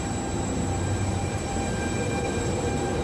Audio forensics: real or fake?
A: fake